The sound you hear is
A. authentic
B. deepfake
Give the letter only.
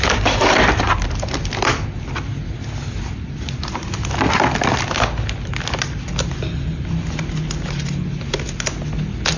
A